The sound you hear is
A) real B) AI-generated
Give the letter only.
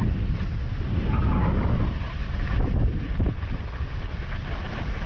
A